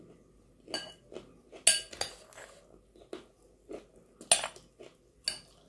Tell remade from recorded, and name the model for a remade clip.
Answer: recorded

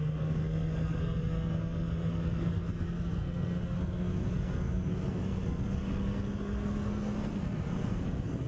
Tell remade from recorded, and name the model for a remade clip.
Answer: remade, codec, SNAC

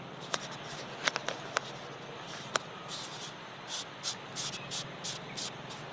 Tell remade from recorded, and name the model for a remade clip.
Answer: recorded